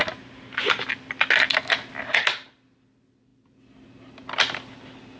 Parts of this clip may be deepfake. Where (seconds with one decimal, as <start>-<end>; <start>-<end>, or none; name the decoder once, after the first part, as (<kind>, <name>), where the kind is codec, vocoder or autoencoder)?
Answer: none